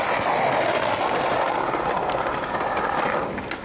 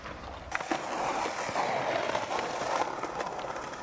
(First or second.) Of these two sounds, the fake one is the second